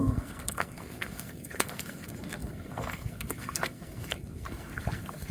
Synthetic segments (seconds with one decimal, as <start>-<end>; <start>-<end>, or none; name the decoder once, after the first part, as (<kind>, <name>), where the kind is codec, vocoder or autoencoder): 0.0-5.3 (codec, SNAC)